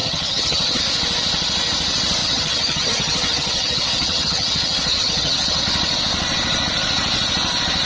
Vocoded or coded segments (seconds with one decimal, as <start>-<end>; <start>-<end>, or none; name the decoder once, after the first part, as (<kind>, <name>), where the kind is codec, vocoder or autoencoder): 0.0-0.8 (vocoder, HiFi-GAN); 2.2-5.6